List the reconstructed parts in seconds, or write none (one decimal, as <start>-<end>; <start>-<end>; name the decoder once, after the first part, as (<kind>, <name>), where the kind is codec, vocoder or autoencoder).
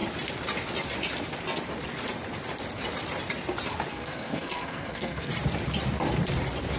3.9-5.3 (codec, SNAC)